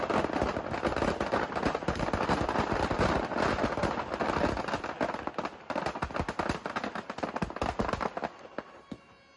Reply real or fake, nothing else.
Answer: real